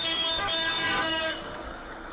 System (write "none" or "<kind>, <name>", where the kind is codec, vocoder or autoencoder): codec, DAC